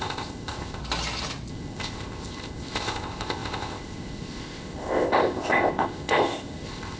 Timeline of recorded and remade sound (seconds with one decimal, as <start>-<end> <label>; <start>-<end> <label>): 0.0-0.8 remade; 0.8-1.5 recorded; 1.5-7.0 remade